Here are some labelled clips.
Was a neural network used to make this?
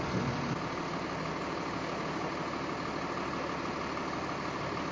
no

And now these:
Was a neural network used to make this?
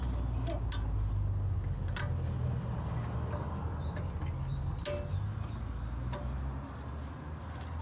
no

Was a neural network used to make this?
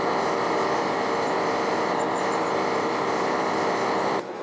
no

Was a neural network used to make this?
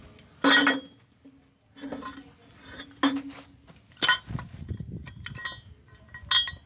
no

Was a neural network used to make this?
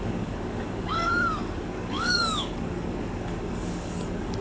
yes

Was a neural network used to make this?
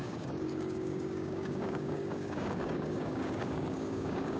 yes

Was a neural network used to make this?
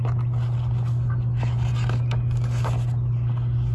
no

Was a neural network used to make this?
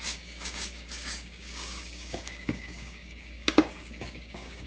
yes